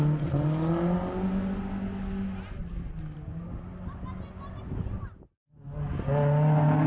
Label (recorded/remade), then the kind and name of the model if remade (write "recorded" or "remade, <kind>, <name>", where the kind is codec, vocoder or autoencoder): recorded